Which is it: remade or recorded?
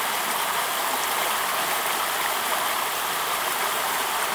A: recorded